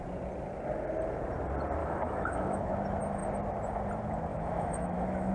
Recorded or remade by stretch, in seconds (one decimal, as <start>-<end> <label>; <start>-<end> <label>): 0.0-1.8 recorded; 1.8-2.7 remade; 2.7-4.3 recorded; 4.3-5.3 remade

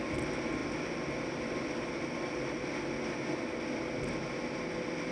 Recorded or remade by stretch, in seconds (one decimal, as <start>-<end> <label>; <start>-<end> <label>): 0.0-5.1 recorded

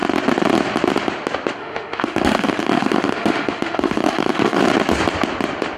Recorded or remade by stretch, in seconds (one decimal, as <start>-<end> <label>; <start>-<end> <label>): 0.0-1.6 recorded; 1.6-4.6 remade; 4.6-5.8 recorded

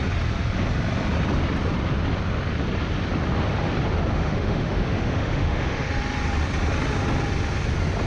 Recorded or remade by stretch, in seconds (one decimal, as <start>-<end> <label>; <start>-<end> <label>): 0.0-4.1 recorded; 4.1-5.9 remade; 5.9-8.1 recorded